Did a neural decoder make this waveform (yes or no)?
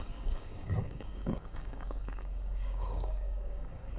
yes